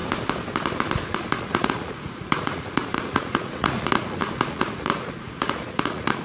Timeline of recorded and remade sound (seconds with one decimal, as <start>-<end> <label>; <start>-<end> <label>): 0.0-1.1 recorded; 1.1-6.2 remade